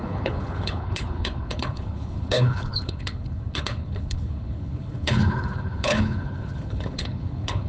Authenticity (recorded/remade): remade